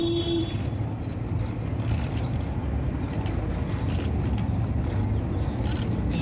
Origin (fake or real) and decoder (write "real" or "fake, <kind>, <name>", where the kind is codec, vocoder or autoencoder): real